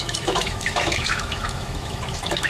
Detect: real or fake fake